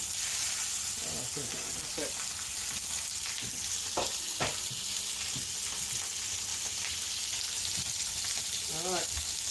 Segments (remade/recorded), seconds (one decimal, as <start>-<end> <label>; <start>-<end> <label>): 0.0-9.5 recorded